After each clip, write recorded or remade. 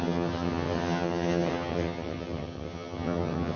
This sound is remade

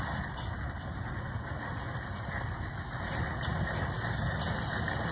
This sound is recorded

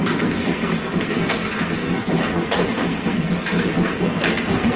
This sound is remade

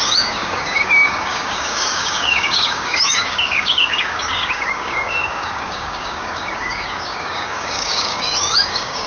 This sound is remade